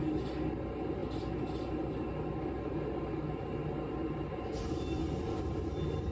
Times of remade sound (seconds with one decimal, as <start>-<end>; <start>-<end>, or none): none